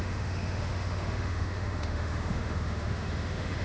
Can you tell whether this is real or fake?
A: fake